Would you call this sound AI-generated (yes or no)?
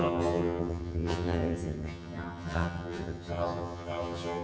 yes